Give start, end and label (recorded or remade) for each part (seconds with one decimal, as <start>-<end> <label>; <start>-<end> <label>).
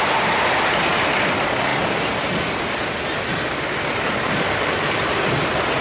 0.0-5.8 recorded